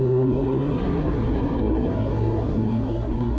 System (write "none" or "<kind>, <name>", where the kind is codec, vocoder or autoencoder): codec, SNAC